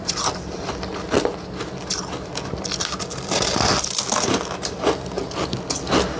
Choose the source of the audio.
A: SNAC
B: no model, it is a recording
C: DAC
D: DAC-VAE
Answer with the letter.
B